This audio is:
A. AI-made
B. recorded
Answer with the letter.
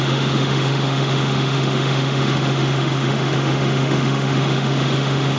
A